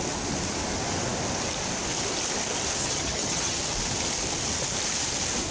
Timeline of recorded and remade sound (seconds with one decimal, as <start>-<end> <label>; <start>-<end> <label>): 0.0-2.8 recorded; 2.8-3.6 remade; 3.6-5.5 recorded

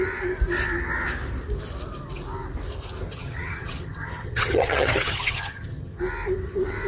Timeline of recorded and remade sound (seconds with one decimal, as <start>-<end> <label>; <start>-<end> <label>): 0.0-3.1 recorded; 3.1-6.0 remade; 6.0-6.9 recorded

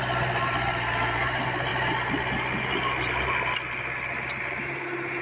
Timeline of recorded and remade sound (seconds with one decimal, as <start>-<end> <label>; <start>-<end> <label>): 0.0-5.2 recorded

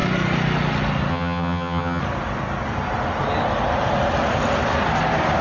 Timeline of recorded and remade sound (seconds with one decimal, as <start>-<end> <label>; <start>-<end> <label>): 0.0-1.1 recorded; 1.1-2.0 remade; 2.0-5.4 recorded

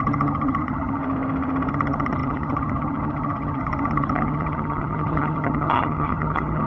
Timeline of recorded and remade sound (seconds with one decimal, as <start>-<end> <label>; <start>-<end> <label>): 0.0-1.0 remade; 1.0-1.7 recorded; 1.7-6.7 remade

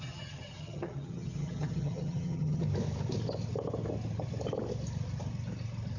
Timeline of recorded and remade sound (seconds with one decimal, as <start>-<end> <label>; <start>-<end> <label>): 0.0-2.6 remade; 2.6-6.0 recorded